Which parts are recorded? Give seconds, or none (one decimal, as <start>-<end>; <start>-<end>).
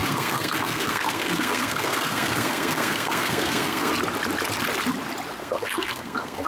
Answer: 3.9-5.4